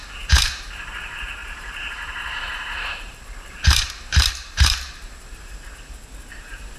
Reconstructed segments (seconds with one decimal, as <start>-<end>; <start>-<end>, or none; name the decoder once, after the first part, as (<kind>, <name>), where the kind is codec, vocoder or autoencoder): 0.0-6.8 (vocoder, BigVGAN v2)